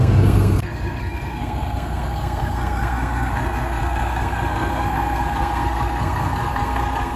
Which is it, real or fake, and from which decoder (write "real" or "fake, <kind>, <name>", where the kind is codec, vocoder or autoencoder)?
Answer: fake, codec, SNAC